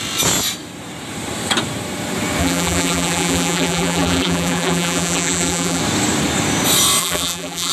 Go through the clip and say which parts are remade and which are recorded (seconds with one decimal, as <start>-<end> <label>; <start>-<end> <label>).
0.0-2.4 recorded; 2.4-5.8 remade; 5.8-7.0 recorded; 7.0-7.7 remade